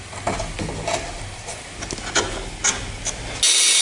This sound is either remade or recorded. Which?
recorded